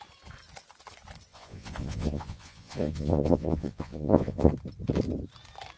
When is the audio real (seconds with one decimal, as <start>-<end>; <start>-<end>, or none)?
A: 0.0-1.3; 4.5-5.8